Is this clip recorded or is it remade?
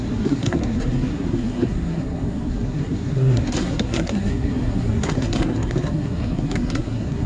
remade